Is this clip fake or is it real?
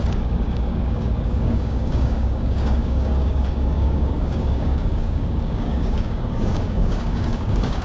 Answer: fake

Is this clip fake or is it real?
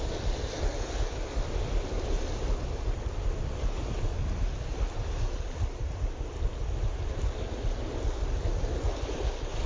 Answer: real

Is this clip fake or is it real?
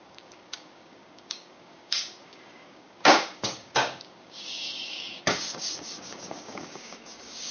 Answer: fake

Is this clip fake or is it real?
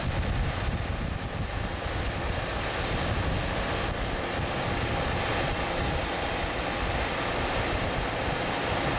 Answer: real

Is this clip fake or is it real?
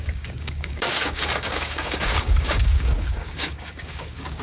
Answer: fake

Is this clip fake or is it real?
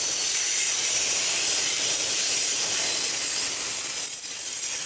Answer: real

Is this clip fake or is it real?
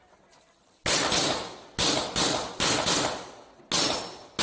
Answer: real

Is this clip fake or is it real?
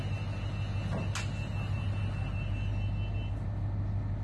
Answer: real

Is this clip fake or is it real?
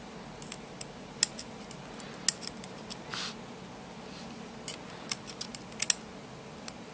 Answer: real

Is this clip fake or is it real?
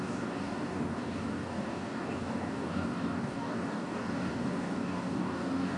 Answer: fake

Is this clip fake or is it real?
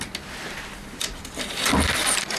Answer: real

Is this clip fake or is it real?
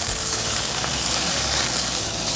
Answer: fake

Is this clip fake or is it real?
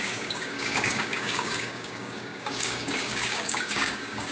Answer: fake